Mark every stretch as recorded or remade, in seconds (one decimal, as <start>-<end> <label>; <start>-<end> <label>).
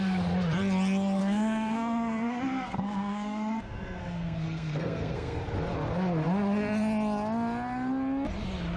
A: 0.0-1.2 recorded; 1.2-5.4 remade; 5.4-8.8 recorded